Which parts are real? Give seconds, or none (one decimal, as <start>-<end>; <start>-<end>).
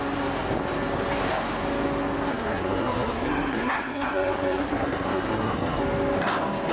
0.0-2.3; 5.8-6.7